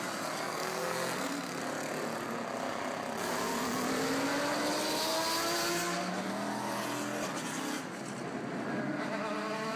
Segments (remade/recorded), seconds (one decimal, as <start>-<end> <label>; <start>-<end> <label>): 0.0-0.5 recorded; 0.5-1.6 remade; 1.6-9.8 recorded